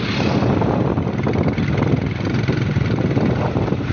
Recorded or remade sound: recorded